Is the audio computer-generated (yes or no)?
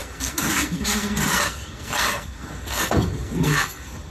yes